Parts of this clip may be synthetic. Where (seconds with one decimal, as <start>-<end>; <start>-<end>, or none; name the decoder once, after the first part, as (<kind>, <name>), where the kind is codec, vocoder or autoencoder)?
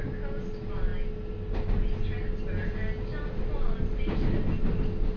none